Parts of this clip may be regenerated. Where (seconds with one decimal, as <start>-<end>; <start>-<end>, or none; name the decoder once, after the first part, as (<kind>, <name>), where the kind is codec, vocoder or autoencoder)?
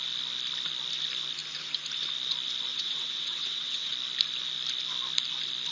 2.7-3.9 (vocoder, WaveNeXt)